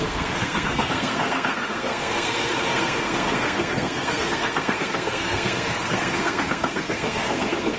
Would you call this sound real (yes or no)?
no